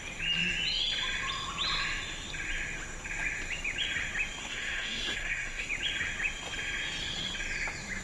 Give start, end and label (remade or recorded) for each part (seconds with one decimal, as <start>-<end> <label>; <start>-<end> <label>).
0.0-4.4 recorded; 4.4-5.7 remade; 5.7-8.0 recorded